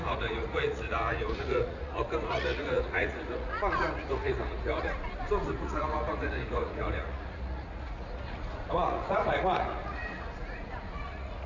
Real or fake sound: fake